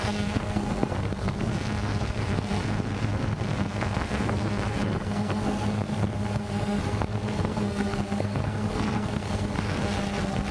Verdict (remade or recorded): remade